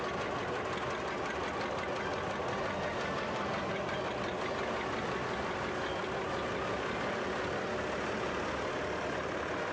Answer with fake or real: real